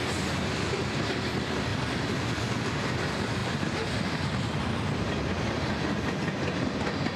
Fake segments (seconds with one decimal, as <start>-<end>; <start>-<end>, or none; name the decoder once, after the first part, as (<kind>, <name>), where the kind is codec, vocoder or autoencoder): 3.4-4.6 (vocoder, BigVGAN v2)